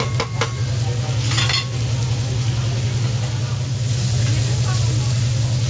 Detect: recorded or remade recorded